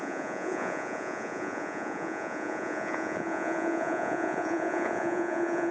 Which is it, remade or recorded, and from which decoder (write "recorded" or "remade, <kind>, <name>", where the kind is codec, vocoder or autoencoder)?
remade, vocoder, Vocos